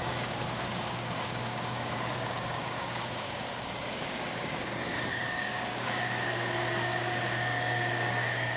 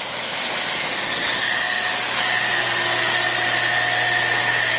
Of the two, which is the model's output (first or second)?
first